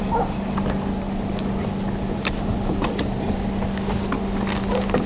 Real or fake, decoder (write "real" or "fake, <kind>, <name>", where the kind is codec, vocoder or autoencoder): real